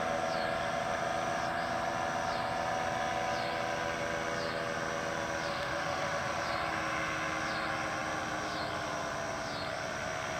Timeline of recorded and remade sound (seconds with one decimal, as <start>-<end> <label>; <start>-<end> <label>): 0.0-5.5 recorded; 5.5-6.3 remade; 6.3-10.4 recorded